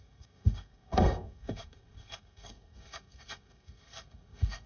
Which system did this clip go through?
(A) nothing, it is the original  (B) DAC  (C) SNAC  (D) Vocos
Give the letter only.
C